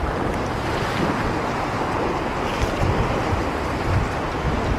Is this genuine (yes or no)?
yes